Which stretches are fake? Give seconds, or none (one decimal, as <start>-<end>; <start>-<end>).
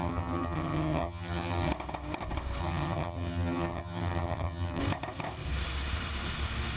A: 0.0-1.7; 2.6-4.8